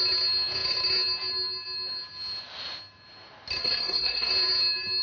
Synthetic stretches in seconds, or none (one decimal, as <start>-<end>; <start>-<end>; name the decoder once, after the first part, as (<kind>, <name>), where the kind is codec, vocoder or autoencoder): 3.6-4.3 (codec, SNAC)